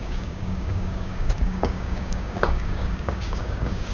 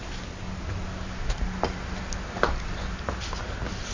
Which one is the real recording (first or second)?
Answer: second